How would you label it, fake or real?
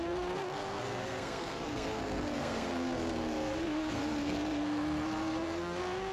fake